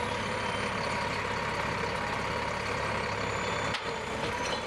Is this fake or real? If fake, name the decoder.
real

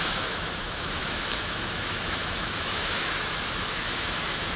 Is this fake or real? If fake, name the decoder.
fake, autoencoder, DAC-VAE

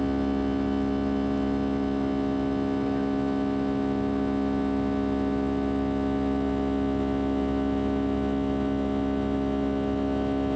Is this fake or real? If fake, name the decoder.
real